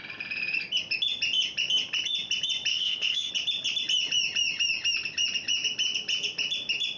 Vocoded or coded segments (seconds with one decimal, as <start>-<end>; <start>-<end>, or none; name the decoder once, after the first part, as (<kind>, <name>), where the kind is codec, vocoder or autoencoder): 2.7-3.3 (codec, ZipCodec)